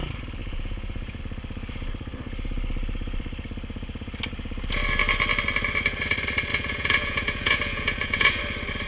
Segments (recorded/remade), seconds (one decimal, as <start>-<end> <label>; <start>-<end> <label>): 0.0-0.4 recorded; 0.4-1.2 remade; 1.2-6.5 recorded; 6.5-8.4 remade; 8.4-8.9 recorded